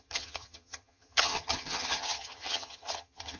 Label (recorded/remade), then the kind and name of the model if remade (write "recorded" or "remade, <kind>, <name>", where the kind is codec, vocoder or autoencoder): remade, vocoder, HiFi-GAN